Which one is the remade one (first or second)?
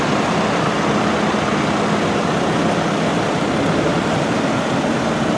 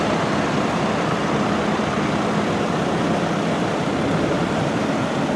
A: second